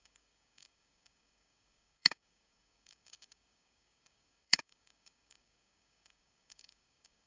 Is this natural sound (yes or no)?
no